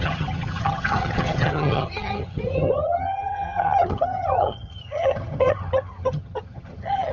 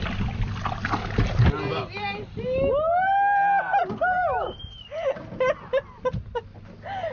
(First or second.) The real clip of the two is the second